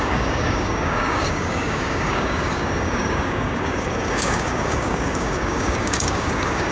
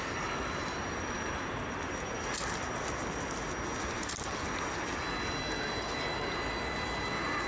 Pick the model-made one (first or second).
first